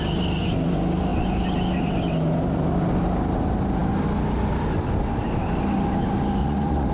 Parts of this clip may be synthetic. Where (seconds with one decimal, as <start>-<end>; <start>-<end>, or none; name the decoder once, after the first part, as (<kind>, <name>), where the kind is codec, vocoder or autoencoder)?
6.4-6.9 (vocoder, Vocos)